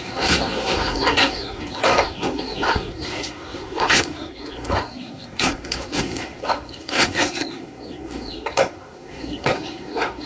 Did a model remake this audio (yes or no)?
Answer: yes